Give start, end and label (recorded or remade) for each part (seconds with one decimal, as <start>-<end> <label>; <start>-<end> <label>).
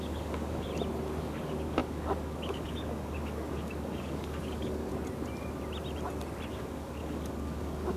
0.0-0.7 remade; 0.7-1.2 recorded; 1.2-4.9 remade; 4.9-6.5 recorded; 6.5-8.0 remade